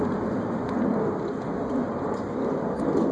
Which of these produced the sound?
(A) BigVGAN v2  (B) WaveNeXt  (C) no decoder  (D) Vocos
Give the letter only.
C